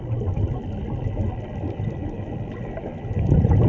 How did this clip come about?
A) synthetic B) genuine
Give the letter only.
B